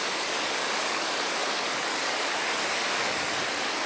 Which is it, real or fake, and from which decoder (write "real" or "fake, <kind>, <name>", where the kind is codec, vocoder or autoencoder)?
fake, codec, DAC